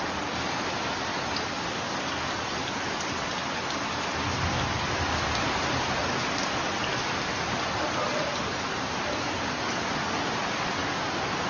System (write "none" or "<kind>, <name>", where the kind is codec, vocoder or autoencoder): none